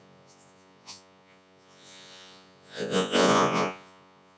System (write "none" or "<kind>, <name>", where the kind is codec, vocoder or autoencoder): vocoder, Vocos